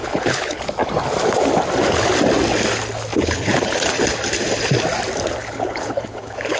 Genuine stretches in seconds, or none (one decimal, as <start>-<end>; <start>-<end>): 0.6-3.1; 3.6-5.4